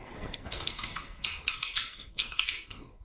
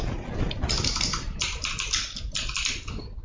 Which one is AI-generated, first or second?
first